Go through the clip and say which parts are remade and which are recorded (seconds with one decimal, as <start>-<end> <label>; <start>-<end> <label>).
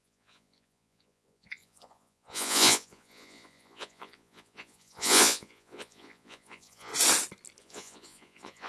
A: 0.0-6.9 remade; 6.9-7.6 recorded; 7.6-8.7 remade